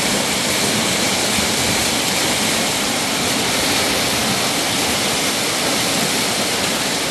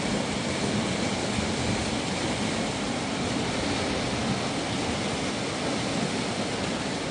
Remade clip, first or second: first